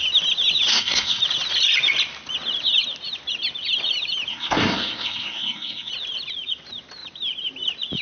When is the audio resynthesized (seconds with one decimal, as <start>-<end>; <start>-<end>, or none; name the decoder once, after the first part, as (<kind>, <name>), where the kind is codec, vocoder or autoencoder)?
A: 0.7-1.2 (codec, SNAC); 4.3-5.9